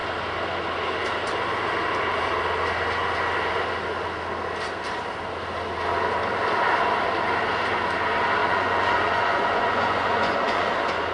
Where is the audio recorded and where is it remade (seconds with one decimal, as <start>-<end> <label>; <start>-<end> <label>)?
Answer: 0.0-8.4 recorded; 8.4-10.7 remade; 10.7-11.1 recorded